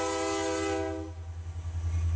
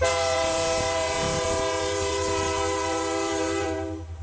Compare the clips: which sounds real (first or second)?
first